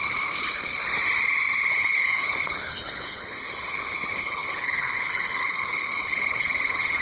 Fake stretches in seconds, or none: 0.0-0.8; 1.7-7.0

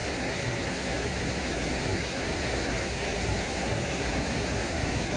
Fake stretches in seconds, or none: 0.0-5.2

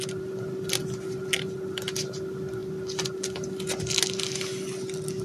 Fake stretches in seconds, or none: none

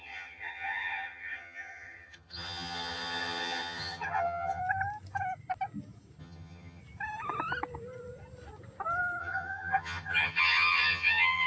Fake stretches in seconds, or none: 0.0-4.6; 6.2-6.8; 9.2-11.5

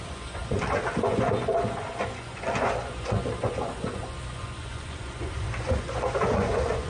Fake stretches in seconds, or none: 0.0-6.9